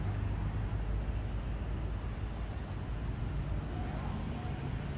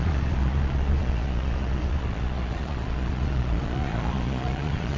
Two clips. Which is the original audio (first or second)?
first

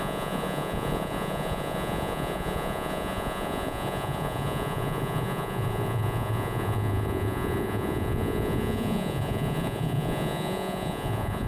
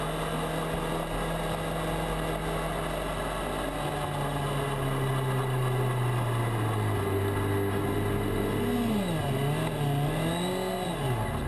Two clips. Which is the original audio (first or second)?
second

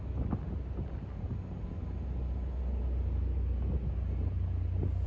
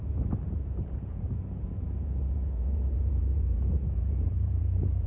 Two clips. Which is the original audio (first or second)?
first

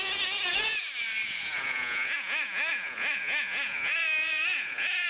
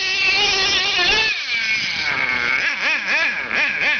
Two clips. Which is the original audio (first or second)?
second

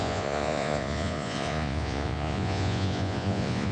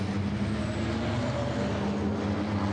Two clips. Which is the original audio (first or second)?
second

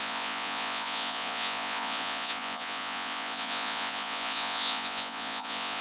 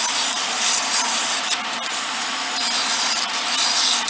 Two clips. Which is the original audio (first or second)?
second